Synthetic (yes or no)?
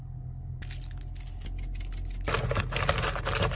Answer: no